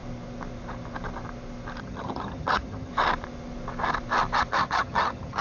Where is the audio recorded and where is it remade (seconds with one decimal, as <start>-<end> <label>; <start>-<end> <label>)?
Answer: 0.0-1.8 recorded; 1.8-2.9 remade; 2.9-4.5 recorded; 4.5-5.4 remade

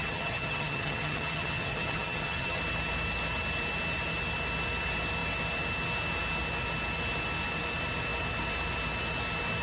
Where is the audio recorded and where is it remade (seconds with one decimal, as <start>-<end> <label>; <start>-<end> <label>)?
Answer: 0.0-2.6 remade; 2.6-9.6 recorded

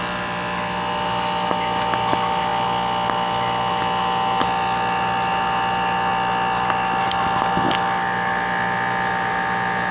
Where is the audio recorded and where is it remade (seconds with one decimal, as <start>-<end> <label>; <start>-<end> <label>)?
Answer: 0.0-9.9 recorded

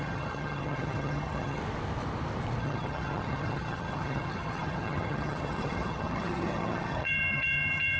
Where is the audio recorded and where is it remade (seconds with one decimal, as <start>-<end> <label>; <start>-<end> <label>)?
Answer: 0.0-1.6 remade; 1.6-2.6 recorded; 2.6-8.0 remade

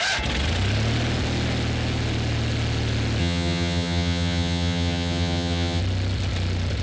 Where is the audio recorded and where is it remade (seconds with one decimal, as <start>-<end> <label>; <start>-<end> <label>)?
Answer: 0.0-3.2 recorded; 3.2-5.8 remade; 5.8-6.8 recorded

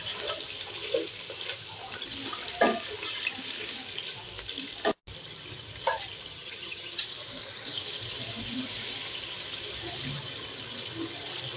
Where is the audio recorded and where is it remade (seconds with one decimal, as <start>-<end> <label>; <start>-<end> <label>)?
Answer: 0.0-6.3 recorded; 6.3-7.0 remade; 7.0-11.6 recorded